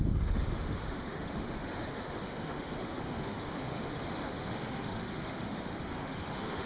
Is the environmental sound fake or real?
fake